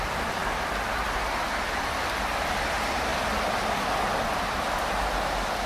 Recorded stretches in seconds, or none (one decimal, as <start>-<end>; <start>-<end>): 0.0-5.7